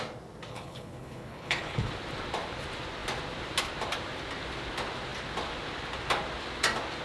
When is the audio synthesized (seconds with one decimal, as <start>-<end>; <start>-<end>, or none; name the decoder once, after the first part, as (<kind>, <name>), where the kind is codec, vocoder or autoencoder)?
0.5-1.9 (codec, HILCodec)